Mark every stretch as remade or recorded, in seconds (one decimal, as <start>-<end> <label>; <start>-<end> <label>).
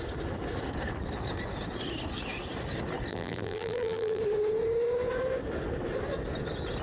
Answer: 0.0-3.1 recorded; 3.1-4.2 remade; 4.2-6.8 recorded